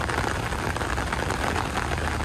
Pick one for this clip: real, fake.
real